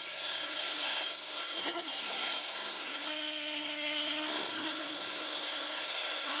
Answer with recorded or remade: remade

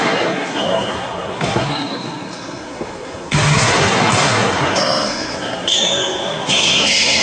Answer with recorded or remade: remade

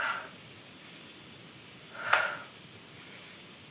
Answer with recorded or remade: recorded